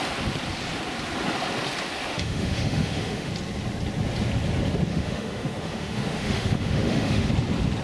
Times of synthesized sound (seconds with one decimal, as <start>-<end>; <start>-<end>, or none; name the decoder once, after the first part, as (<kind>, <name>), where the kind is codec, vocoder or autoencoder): 2.1-3.3 (autoencoder, DAC-VAE); 4.9-7.3